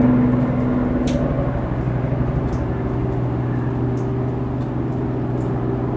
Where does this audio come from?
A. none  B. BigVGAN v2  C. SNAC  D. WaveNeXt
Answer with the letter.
A